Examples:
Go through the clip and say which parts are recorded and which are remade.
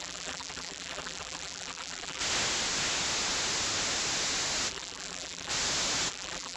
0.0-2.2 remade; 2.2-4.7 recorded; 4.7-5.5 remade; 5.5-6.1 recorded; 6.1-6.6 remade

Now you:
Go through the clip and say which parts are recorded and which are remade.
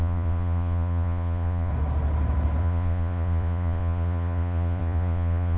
0.0-1.7 remade; 1.7-2.6 recorded; 2.6-5.6 remade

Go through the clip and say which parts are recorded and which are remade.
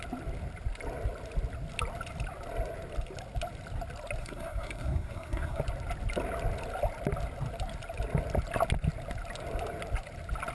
0.0-4.2 recorded; 4.2-5.6 remade; 5.6-10.5 recorded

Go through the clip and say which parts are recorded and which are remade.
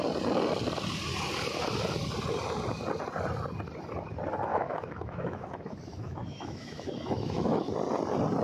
0.0-4.5 recorded; 4.5-7.7 remade; 7.7-8.4 recorded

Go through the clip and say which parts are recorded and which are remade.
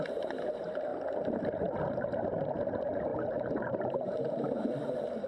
0.0-0.9 remade; 0.9-1.9 recorded; 1.9-5.3 remade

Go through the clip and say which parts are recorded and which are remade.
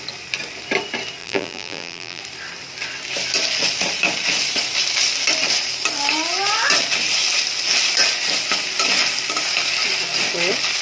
0.0-1.2 recorded; 1.2-2.2 remade; 2.2-10.8 recorded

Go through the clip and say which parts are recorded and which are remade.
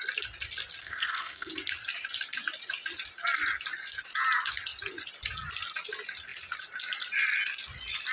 0.0-0.8 recorded; 0.8-1.5 remade; 1.5-8.1 recorded